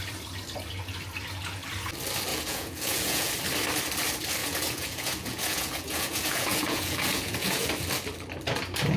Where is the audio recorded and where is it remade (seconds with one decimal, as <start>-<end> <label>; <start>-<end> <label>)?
0.0-2.3 recorded; 2.3-3.3 remade; 3.3-4.4 recorded; 4.4-7.7 remade; 7.7-9.0 recorded